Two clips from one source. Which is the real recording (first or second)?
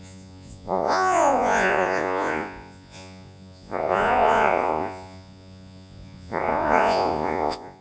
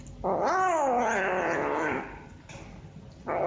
second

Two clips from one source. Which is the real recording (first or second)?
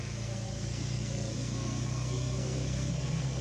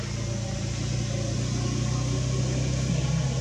second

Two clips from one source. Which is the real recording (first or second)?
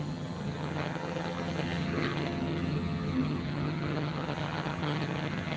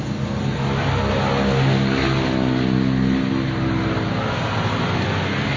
second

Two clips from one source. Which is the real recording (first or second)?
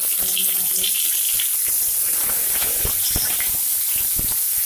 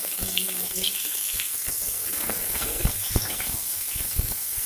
first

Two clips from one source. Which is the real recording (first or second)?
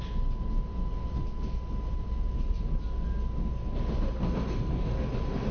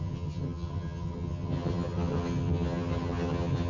first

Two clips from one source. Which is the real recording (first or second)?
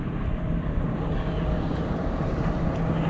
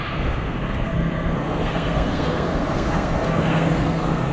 first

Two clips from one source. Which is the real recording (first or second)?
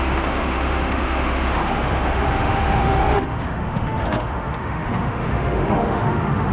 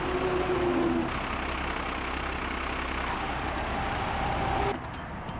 second